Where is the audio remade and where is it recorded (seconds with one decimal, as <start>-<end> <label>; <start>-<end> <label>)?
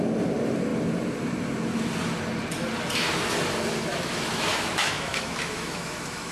0.0-3.9 recorded; 3.9-6.3 remade